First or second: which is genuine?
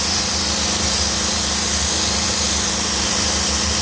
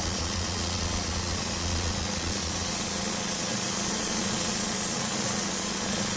first